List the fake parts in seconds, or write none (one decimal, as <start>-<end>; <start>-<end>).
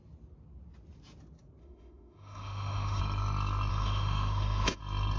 1.6-3.0; 3.7-4.8